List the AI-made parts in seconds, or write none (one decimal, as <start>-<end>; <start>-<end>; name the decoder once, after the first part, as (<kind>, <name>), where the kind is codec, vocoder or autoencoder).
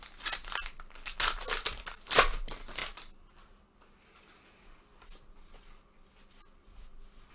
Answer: none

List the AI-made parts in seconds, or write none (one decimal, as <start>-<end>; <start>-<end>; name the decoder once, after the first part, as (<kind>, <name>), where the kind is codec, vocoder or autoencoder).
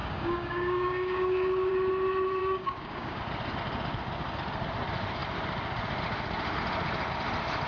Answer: 0.0-1.7 (codec, DAC); 2.4-3.2